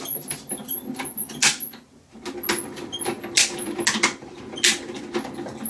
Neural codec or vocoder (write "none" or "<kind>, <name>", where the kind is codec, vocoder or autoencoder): none